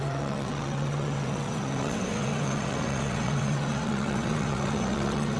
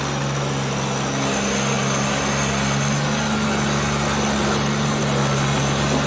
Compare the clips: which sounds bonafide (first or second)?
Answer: second